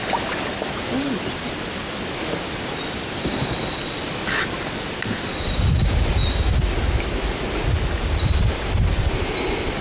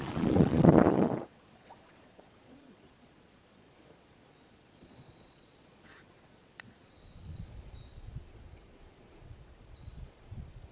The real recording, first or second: first